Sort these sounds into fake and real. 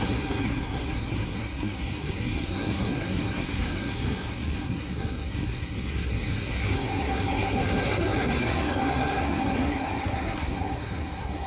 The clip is fake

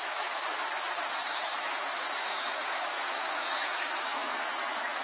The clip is fake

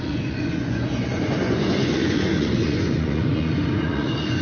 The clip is fake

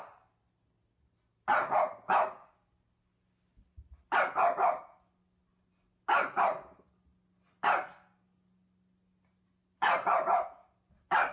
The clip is real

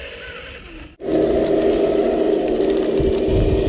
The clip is real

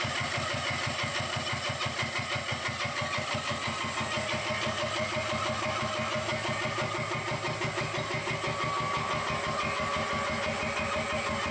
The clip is real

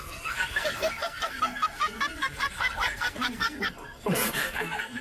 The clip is fake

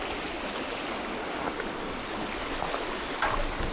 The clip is real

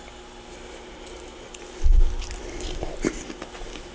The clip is real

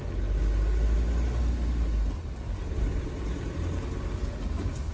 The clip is real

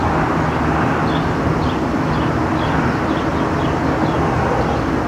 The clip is real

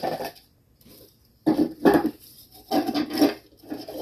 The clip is real